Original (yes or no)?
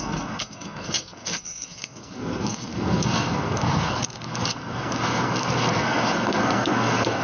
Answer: no